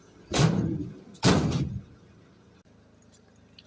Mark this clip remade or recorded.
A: recorded